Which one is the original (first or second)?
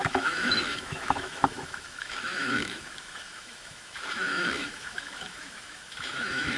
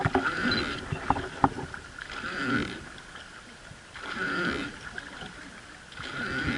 second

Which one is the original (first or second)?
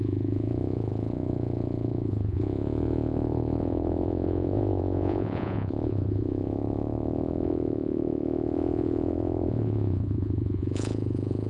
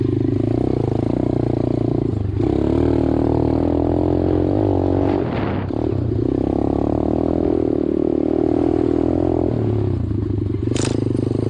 second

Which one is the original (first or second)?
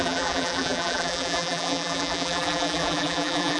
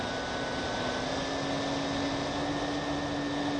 second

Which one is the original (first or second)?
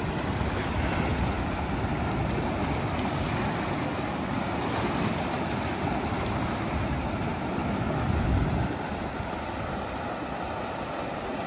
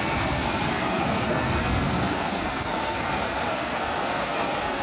first